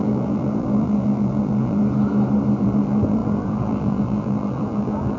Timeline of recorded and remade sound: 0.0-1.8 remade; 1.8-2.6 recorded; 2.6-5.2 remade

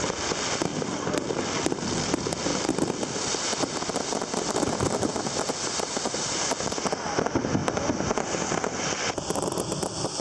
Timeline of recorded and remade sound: 0.0-0.7 recorded; 0.7-2.1 remade; 2.1-2.5 recorded; 2.5-3.6 remade; 3.6-7.6 recorded; 7.6-9.1 remade; 9.1-10.2 recorded

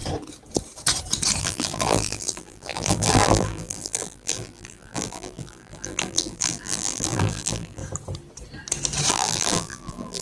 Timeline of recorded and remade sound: 0.0-1.4 recorded; 1.4-7.8 remade; 7.8-9.1 recorded; 9.1-10.2 remade

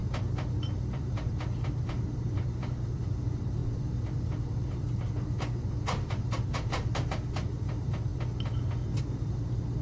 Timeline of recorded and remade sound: 0.0-0.6 recorded; 0.6-8.1 remade; 8.1-9.0 recorded; 9.0-9.8 remade

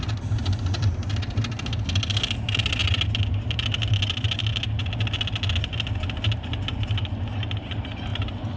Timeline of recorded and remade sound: 0.0-8.1 recorded; 8.1-8.6 remade

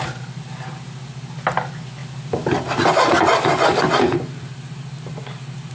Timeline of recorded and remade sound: 0.0-5.7 recorded